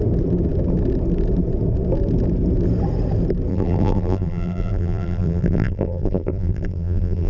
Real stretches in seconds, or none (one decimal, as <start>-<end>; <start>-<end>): 0.0-3.5

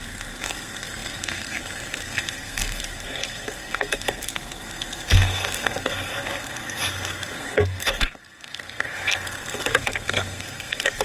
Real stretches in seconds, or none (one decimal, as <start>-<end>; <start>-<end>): none

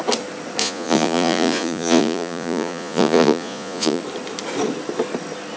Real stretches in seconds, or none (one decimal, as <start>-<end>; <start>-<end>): 0.0-0.6; 4.0-5.6

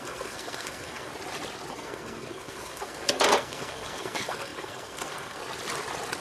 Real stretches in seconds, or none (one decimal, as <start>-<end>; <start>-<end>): 1.1-1.7; 5.4-6.2

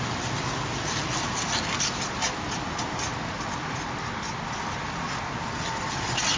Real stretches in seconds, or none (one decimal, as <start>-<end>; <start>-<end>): 0.0-6.4

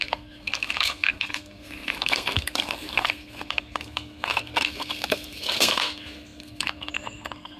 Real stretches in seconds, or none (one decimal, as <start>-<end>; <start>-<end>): none

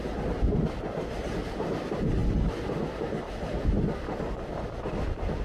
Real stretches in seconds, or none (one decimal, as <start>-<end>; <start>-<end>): 0.0-5.4